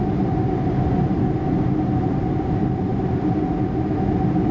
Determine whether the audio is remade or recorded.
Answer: recorded